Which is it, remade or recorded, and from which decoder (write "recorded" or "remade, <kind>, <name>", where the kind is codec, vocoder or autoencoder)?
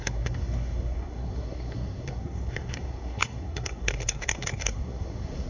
remade, codec, SNAC